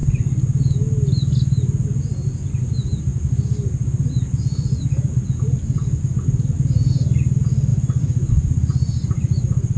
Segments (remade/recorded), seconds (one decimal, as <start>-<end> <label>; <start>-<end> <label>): 0.0-9.8 recorded